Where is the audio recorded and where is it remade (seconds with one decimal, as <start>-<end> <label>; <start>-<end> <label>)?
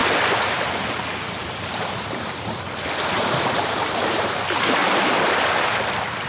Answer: 0.0-3.8 remade; 3.8-4.8 recorded; 4.8-6.3 remade